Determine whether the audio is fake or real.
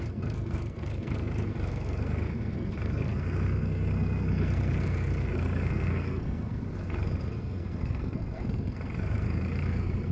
fake